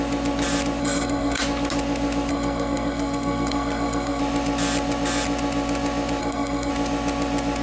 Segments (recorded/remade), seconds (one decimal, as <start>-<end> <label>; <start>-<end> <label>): 0.0-0.8 recorded; 0.8-1.4 remade; 1.4-2.3 recorded; 2.3-4.2 remade; 4.2-6.2 recorded; 6.2-6.7 remade; 6.7-7.6 recorded